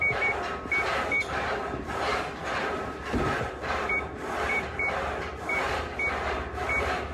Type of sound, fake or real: fake